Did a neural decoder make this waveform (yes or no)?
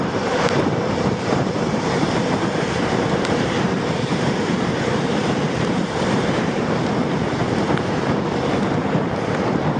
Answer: yes